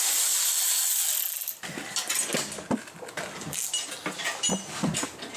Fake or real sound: real